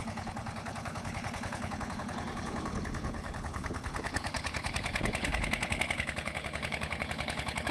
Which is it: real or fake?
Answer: fake